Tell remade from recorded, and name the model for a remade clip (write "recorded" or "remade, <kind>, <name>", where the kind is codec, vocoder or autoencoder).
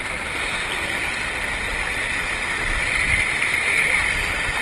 recorded